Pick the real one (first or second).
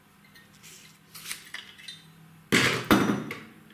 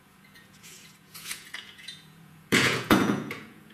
first